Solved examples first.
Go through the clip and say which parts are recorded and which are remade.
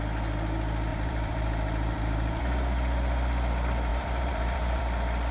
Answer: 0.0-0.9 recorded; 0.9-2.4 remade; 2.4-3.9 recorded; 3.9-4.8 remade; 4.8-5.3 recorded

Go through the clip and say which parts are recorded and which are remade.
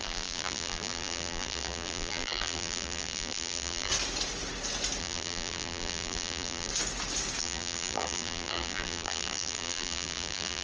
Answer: 0.0-3.9 remade; 3.9-5.0 recorded; 5.0-6.7 remade; 6.7-7.4 recorded; 7.4-10.6 remade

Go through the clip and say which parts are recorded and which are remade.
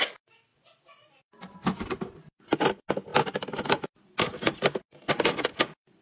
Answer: 0.0-4.3 recorded; 4.3-4.8 remade; 4.8-6.0 recorded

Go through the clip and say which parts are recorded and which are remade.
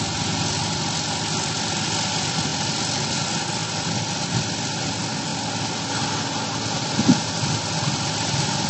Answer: 0.0-2.5 remade; 2.5-3.1 recorded; 3.1-5.3 remade; 5.3-7.9 recorded; 7.9-8.7 remade